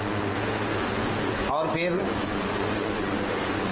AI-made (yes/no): yes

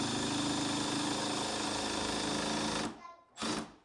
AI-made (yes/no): no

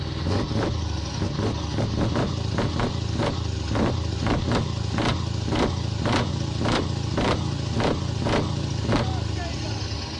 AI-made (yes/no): no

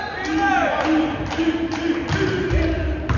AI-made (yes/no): no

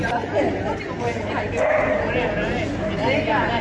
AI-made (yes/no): no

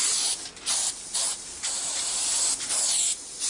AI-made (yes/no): no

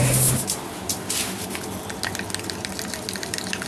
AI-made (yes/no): no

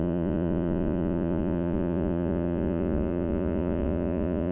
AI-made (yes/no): yes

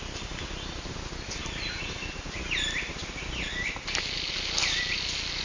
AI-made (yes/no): no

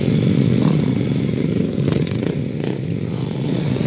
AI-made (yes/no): yes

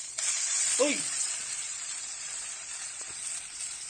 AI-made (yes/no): yes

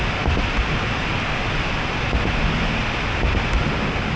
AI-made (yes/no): no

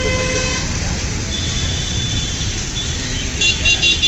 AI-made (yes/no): no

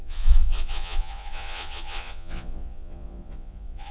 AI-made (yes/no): yes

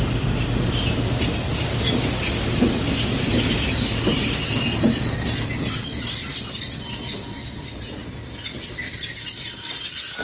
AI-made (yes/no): no